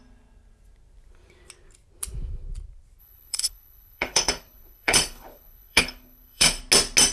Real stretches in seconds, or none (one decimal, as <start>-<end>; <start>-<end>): 0.0-3.0; 6.6-7.1